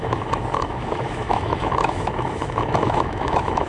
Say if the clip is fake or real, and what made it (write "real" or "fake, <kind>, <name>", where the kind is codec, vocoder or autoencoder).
fake, autoencoder, DAC-VAE